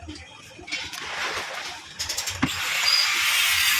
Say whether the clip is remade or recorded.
recorded